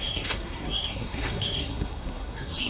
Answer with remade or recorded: remade